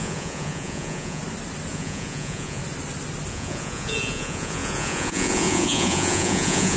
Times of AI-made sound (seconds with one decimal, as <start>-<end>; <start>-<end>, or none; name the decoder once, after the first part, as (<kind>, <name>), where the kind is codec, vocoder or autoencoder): 0.0-1.2 (vocoder, Vocos); 1.7-2.6; 3.3-6.8